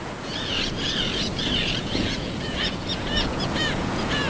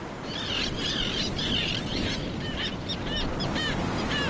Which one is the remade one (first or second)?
first